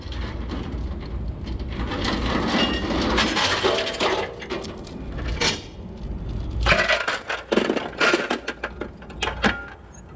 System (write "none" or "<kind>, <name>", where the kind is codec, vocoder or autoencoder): none